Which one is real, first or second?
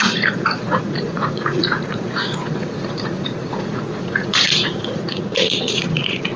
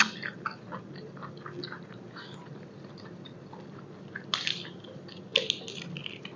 second